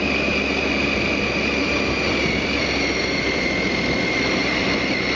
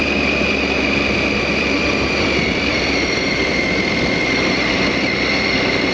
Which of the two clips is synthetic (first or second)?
second